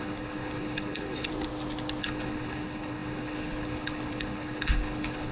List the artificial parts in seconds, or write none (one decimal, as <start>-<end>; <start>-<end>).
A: 0.0-1.3; 2.0-5.3